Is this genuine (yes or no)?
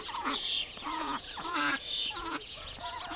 no